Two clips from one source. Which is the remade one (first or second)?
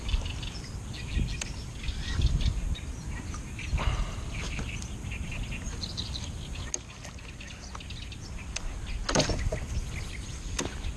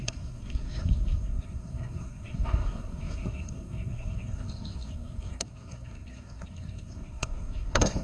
second